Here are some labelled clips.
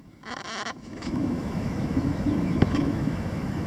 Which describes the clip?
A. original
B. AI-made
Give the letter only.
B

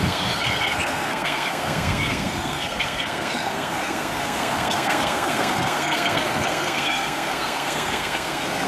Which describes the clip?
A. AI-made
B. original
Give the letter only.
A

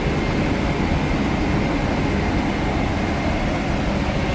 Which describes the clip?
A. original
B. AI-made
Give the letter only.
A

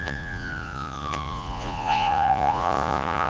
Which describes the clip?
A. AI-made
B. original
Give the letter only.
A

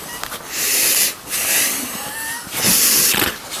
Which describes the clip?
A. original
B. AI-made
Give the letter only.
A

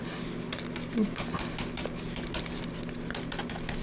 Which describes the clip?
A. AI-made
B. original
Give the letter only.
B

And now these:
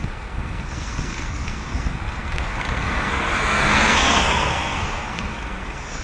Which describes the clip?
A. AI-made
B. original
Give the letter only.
A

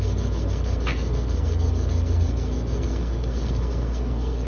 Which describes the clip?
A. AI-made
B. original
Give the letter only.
A